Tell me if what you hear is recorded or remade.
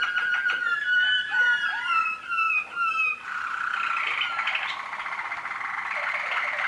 recorded